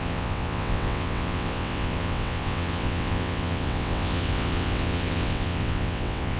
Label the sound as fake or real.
fake